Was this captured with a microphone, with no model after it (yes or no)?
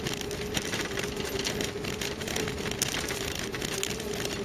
yes